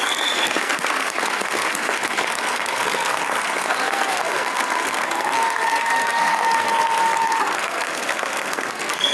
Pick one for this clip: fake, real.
fake